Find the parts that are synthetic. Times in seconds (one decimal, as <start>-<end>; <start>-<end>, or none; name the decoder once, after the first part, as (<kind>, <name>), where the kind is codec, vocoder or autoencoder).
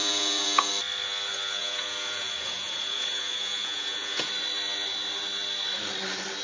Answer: 0.0-0.7 (vocoder, Vocos); 1.6-4.3